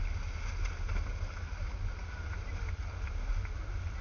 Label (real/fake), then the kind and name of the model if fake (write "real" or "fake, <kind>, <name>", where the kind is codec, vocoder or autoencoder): real